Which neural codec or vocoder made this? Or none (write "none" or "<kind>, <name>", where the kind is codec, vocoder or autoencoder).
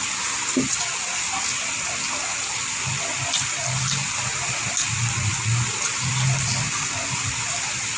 none